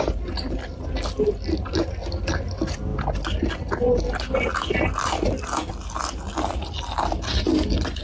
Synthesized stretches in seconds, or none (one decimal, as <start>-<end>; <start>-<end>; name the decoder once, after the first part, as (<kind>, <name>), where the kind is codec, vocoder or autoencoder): none